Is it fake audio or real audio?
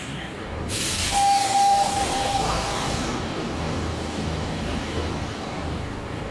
fake